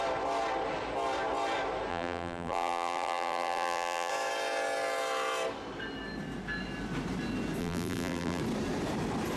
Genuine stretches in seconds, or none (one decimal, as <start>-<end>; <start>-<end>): 0.0-1.9; 4.1-7.6; 8.4-9.4